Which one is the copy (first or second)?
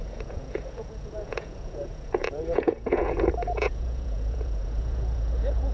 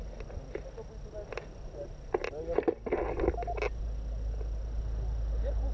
first